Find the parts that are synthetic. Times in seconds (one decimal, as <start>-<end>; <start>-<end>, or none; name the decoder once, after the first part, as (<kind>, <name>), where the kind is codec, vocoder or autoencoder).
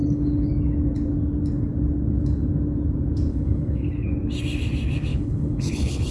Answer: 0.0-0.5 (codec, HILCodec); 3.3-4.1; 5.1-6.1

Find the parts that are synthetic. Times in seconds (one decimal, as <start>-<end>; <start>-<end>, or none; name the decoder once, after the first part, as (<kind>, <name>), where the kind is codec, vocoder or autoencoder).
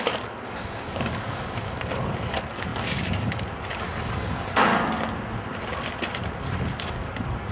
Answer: 0.0-4.7 (codec, DAC); 6.8-7.5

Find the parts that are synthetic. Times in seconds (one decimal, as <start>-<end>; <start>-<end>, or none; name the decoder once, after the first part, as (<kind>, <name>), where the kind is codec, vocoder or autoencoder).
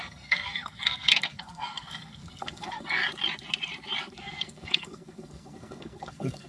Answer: 0.0-3.0 (codec, SNAC); 4.1-6.5